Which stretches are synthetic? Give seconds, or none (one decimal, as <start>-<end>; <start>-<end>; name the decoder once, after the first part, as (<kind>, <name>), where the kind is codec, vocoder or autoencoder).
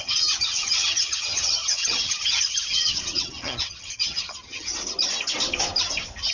0.0-4.7 (vocoder, HiFi-GAN)